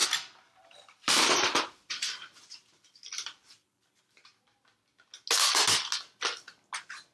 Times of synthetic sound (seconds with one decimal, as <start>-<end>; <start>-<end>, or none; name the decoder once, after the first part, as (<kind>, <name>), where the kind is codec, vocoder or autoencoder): 0.0-4.0 (vocoder, BigVGAN v2)